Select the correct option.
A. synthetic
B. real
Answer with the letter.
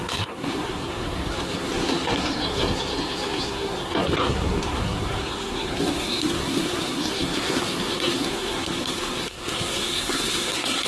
A